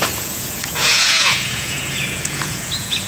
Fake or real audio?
fake